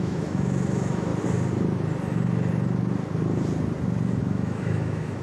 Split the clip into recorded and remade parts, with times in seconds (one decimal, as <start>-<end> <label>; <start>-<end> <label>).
0.0-1.1 remade; 1.1-4.2 recorded; 4.2-5.2 remade